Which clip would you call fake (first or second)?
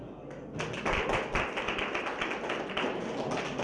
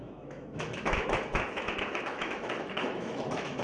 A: second